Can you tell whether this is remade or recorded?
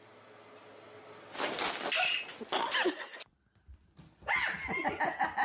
recorded